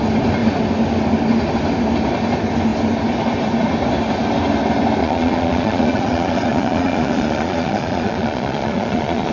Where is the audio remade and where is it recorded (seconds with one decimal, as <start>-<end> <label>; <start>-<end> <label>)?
0.0-5.0 recorded; 5.0-9.3 remade

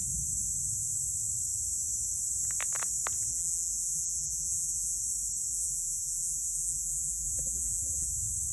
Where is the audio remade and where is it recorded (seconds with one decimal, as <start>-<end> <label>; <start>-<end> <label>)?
0.0-3.3 recorded; 3.3-5.0 remade; 5.0-5.5 recorded; 5.5-8.1 remade; 8.1-8.5 recorded

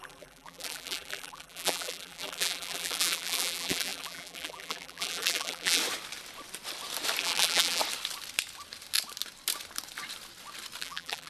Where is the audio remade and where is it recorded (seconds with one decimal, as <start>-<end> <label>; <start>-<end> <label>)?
0.0-5.8 remade; 5.8-7.2 recorded; 7.2-7.8 remade; 7.8-10.8 recorded; 10.8-11.3 remade

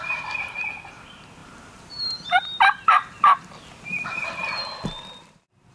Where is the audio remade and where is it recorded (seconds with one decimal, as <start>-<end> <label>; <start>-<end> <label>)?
0.0-4.6 remade; 4.6-5.2 recorded; 5.2-5.7 remade